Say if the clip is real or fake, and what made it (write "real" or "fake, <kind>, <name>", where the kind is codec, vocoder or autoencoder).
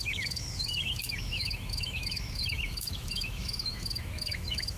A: fake, autoencoder, DAC-VAE